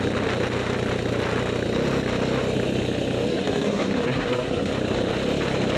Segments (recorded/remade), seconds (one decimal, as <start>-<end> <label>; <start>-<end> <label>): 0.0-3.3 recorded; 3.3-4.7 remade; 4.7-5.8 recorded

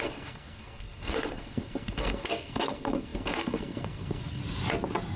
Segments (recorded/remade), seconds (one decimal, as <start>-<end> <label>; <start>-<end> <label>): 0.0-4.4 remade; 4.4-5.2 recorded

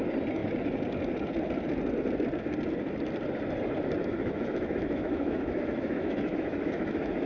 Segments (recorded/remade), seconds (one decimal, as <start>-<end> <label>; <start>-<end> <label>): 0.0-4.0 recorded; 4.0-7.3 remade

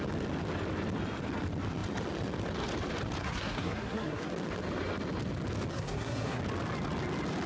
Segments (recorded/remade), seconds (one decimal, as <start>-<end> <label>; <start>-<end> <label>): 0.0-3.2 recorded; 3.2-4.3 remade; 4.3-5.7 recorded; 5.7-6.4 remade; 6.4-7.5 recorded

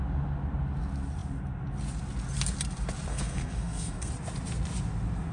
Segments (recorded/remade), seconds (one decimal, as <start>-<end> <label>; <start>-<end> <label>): 0.0-3.1 recorded; 3.1-4.1 remade; 4.1-5.3 recorded

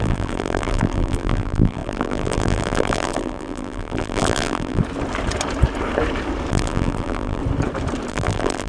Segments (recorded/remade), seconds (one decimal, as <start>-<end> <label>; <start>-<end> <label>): 0.0-4.8 remade; 4.8-6.5 recorded; 6.5-7.4 remade; 7.4-8.1 recorded; 8.1-8.7 remade